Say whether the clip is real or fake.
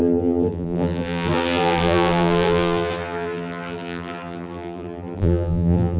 fake